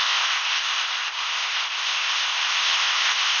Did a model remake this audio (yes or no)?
yes